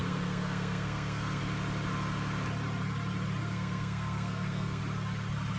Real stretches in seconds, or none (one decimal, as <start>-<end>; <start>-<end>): 1.4-3.4; 4.8-5.6